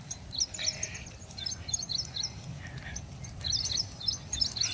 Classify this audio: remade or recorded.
recorded